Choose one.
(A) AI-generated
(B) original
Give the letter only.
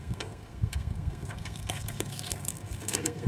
A